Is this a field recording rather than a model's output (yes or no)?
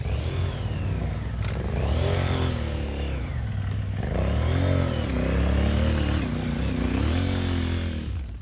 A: yes